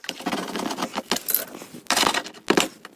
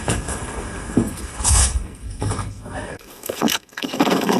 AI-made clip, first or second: second